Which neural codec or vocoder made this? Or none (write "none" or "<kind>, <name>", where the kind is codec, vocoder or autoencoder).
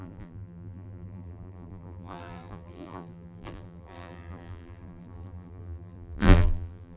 vocoder, BigVGAN v2